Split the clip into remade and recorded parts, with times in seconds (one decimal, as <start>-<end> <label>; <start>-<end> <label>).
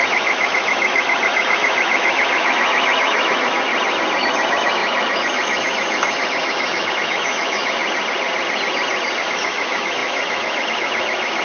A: 0.0-3.7 remade; 3.7-4.2 recorded; 4.2-7.8 remade; 7.8-9.2 recorded; 9.2-11.4 remade